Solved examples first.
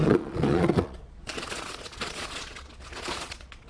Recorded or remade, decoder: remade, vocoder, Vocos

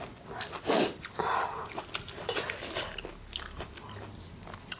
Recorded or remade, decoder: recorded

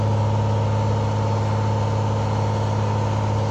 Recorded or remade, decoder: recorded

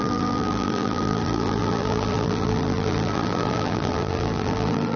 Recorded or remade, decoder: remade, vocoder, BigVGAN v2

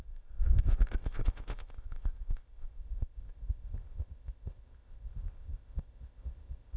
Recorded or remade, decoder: remade, codec, ZipCodec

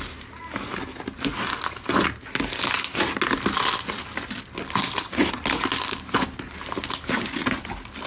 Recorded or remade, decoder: recorded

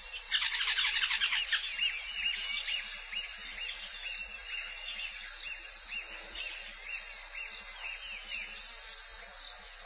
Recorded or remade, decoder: recorded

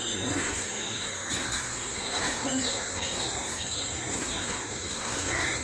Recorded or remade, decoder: remade, codec, SNAC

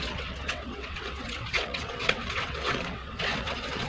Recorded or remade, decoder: remade, vocoder, WaveNeXt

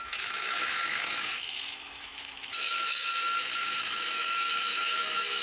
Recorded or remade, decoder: remade, autoencoder, DAC-VAE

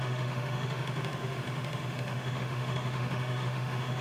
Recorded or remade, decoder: remade, autoencoder, DAC-VAE